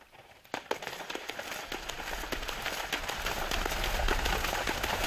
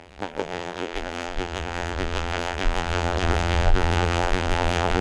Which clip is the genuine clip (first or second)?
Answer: first